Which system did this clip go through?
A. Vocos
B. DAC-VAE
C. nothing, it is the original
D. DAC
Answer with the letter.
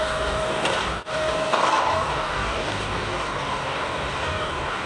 D